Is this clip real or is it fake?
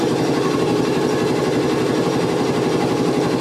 fake